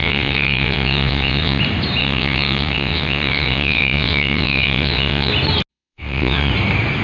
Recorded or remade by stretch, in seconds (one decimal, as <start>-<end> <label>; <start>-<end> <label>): 0.0-1.6 remade; 1.6-2.0 recorded; 2.0-5.3 remade; 5.3-5.7 recorded; 5.7-6.5 remade; 6.5-7.0 recorded